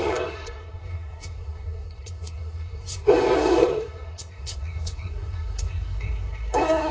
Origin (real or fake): fake